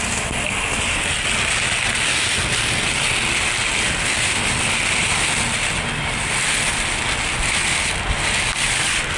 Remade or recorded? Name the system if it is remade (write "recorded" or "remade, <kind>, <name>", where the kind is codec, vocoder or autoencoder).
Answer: recorded